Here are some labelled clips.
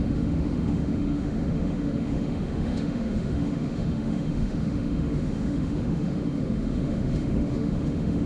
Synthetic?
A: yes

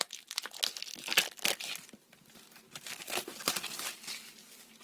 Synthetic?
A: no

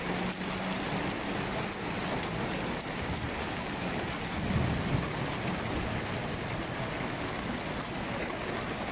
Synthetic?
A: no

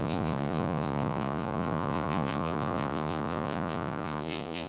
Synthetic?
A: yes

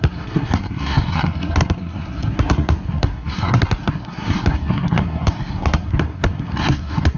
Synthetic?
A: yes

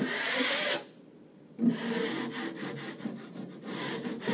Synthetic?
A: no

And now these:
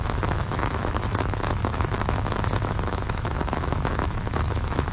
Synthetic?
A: yes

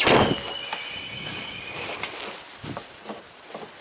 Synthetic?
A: no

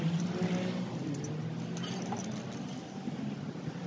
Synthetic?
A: no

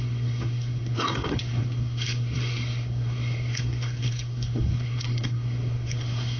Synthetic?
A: yes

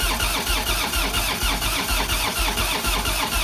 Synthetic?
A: no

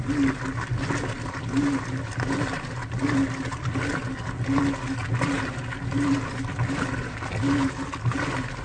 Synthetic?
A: no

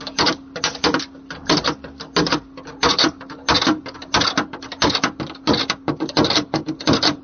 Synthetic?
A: no